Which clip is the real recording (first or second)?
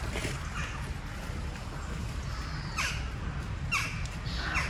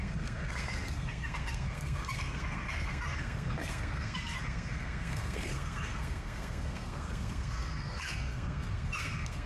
first